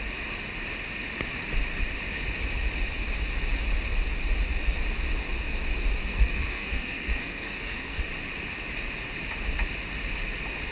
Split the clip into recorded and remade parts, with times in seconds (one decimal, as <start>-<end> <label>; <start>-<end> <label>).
0.0-6.1 recorded; 6.1-8.0 remade; 8.0-10.7 recorded